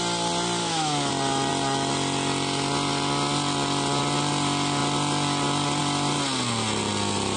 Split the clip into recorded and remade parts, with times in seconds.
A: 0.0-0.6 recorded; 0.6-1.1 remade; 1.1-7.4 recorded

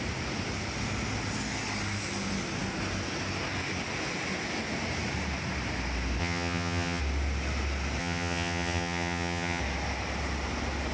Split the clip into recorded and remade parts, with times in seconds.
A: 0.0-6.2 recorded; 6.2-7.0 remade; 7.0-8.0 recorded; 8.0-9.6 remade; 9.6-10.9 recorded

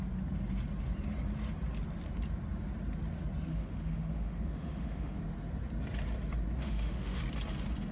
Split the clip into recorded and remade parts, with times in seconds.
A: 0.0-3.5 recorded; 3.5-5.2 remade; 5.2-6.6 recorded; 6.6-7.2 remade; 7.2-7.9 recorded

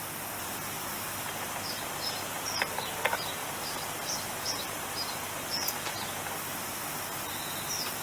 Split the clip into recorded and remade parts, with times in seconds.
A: 0.0-8.0 recorded

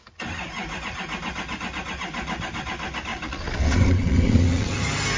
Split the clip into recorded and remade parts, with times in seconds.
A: 0.0-3.1 recorded; 3.1-4.8 remade; 4.8-5.2 recorded

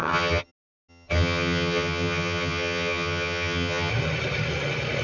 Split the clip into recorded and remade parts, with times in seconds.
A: 0.0-0.5 remade; 0.5-0.9 recorded; 0.9-3.9 remade; 3.9-5.0 recorded